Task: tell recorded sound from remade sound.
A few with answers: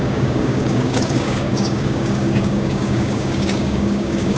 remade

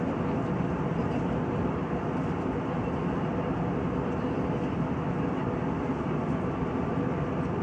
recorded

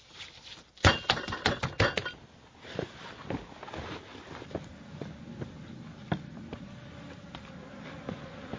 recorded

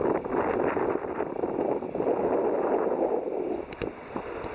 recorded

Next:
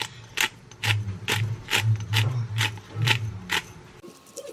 recorded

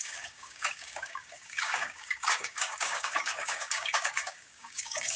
remade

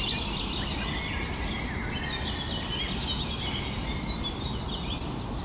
recorded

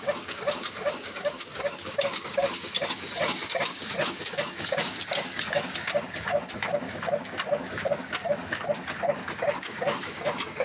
remade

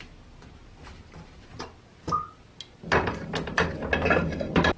recorded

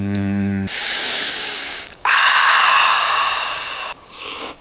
remade